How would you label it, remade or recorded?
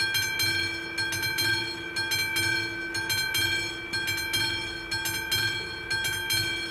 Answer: recorded